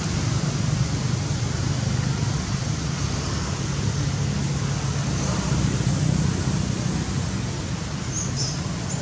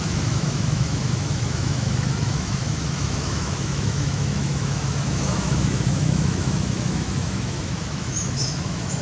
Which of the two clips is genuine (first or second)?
first